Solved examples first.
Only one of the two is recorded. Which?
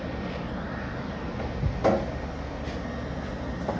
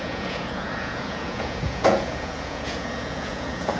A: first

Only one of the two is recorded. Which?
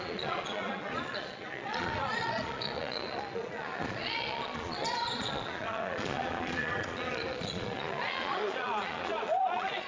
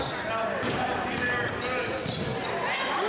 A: second